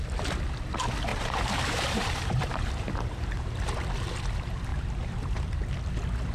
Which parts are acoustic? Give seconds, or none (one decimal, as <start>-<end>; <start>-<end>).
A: 0.0-1.1; 3.5-4.7; 5.6-6.3